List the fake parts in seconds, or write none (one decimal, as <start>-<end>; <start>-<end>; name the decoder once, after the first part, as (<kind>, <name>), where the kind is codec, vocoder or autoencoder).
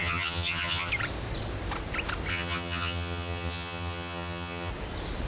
0.0-0.9 (vocoder, HiFi-GAN); 2.3-4.7